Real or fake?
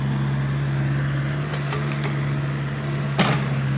real